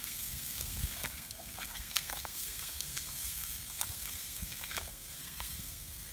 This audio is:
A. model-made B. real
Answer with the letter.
A